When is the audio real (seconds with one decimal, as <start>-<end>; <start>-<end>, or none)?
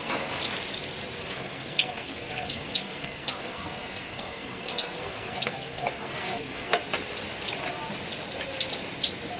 0.4-1.2; 6.8-9.4